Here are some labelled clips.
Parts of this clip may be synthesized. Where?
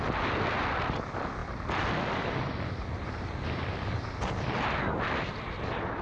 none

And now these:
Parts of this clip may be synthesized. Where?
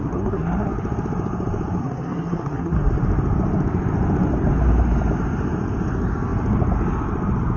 0.0-0.7 (codec, SNAC); 1.8-2.9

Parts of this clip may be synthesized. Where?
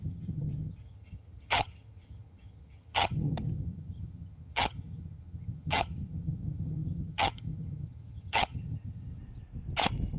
0.0-9.2 (vocoder, HiFi-GAN)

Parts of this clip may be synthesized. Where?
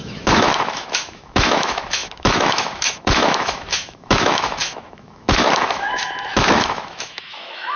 0.0-7.8 (autoencoder, DAC-VAE)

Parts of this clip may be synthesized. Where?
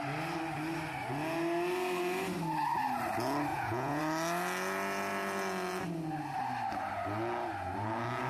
3.5-4.0 (vocoder, Vocos)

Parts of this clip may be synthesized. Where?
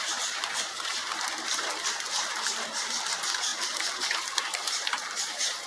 0.0-5.7 (vocoder, BigVGAN v2)